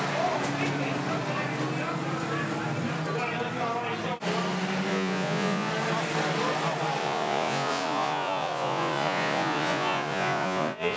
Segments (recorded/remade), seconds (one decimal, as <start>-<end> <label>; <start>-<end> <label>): 0.0-4.9 recorded; 4.9-5.7 remade; 5.7-7.0 recorded; 7.0-11.0 remade